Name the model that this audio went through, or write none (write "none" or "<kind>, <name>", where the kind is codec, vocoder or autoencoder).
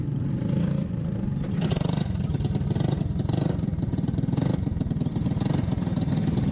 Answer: none